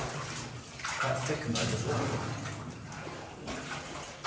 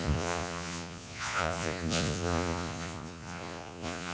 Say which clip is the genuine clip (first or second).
first